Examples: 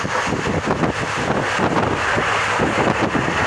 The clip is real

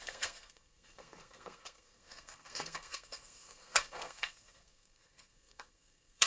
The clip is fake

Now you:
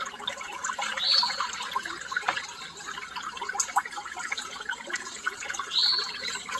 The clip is real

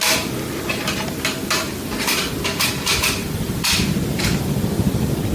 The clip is real